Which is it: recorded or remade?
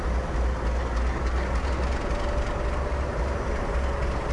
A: recorded